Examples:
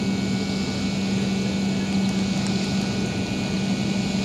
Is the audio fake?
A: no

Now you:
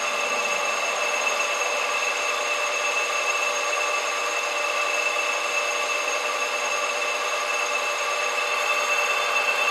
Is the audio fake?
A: no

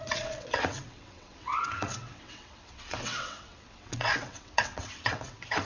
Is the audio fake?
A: yes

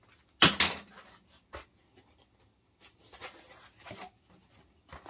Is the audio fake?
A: no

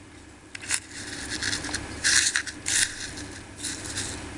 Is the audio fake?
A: no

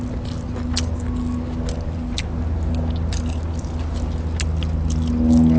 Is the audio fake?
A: no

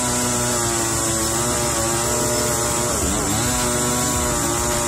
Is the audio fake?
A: no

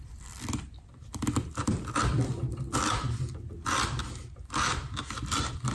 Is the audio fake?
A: no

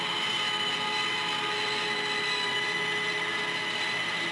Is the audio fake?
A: no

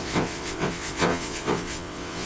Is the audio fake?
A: yes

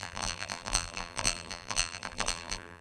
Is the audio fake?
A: yes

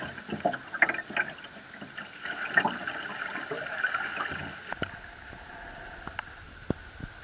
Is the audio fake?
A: no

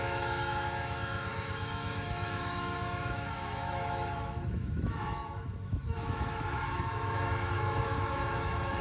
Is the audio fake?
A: yes